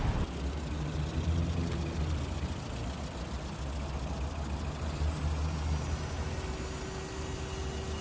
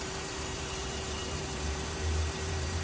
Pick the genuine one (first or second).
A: first